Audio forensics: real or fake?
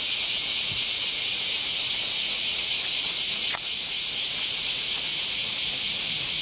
fake